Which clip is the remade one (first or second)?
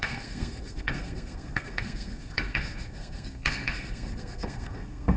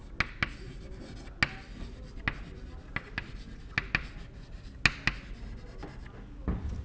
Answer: first